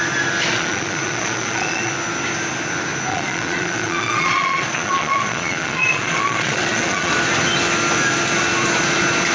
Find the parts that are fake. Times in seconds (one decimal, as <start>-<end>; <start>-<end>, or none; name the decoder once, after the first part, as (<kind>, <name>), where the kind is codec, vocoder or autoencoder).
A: 0.5-1.9 (vocoder, Vocos); 3.1-7.1